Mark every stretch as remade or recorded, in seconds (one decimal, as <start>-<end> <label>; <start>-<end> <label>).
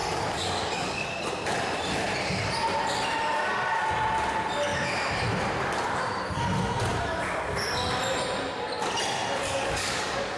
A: 0.0-1.2 remade; 1.2-9.4 recorded; 9.4-10.4 remade